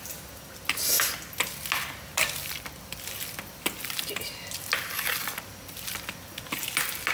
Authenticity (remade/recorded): recorded